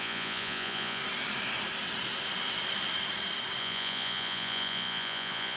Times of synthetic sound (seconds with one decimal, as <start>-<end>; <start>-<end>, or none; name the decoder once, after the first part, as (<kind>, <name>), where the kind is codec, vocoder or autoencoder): 0.0-1.0 (vocoder, Vocos); 3.6-5.6